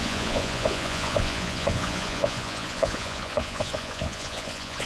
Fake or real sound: fake